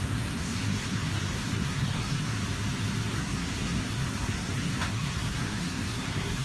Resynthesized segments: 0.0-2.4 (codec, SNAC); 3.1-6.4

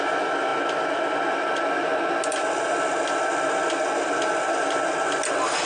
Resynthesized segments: none

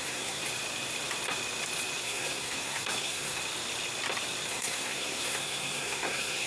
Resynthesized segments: 0.0-0.4 (codec, SNAC); 2.0-3.4; 4.5-6.5

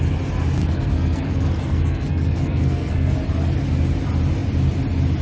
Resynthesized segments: 0.6-3.1 (codec, SNAC)